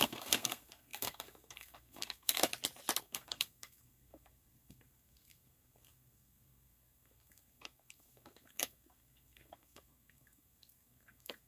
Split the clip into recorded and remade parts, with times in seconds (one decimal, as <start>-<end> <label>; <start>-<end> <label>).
0.0-2.5 remade; 2.5-3.0 recorded; 3.0-11.5 remade